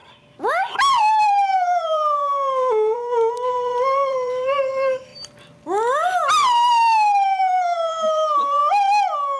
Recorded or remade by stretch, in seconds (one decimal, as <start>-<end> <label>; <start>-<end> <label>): 0.0-1.0 recorded; 1.0-5.1 remade; 5.1-6.3 recorded; 6.3-8.6 remade; 8.6-9.4 recorded